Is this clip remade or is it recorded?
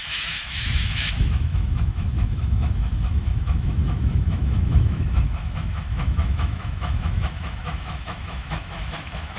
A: remade